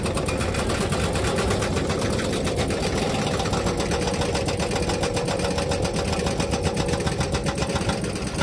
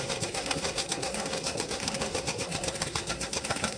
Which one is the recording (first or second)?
first